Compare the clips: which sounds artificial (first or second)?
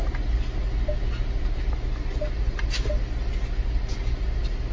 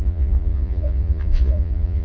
second